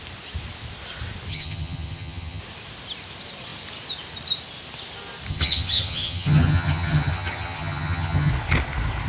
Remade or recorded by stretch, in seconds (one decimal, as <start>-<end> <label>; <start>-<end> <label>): 0.0-1.3 recorded; 1.3-2.4 remade; 2.4-5.3 recorded; 5.3-8.3 remade; 8.3-9.1 recorded